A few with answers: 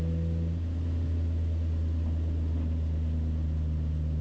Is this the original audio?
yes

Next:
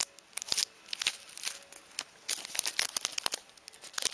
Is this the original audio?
yes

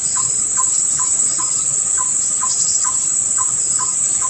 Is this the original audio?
no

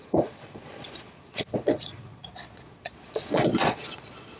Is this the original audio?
no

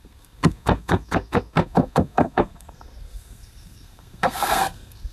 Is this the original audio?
no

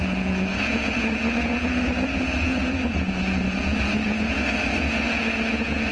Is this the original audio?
no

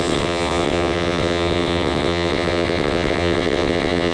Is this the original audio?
no